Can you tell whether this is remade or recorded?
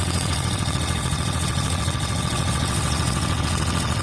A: remade